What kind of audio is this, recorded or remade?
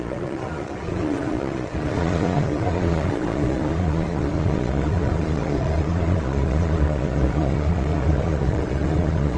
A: remade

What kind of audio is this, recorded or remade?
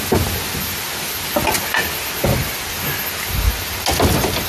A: recorded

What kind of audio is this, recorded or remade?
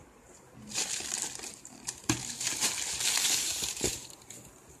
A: recorded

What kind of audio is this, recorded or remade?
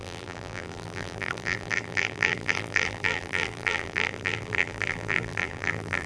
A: remade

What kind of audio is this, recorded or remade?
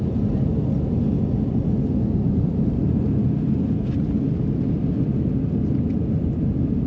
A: recorded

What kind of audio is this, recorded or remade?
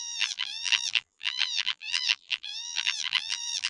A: remade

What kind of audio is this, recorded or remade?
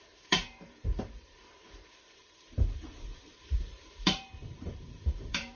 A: remade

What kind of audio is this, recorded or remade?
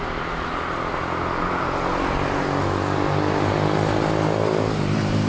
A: recorded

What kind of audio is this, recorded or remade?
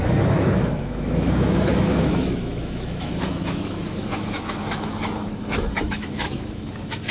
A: remade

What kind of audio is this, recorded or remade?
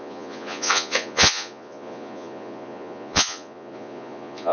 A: remade